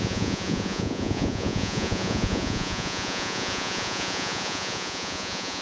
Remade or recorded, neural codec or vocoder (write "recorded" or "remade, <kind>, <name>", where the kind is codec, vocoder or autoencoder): remade, vocoder, Vocos